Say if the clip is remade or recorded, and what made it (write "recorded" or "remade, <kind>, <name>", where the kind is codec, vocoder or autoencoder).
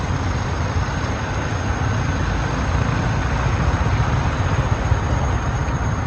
recorded